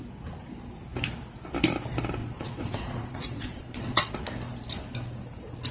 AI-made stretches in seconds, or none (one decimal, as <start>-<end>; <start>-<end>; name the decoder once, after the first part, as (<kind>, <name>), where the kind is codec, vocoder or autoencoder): 2.2-4.1 (vocoder, Vocos)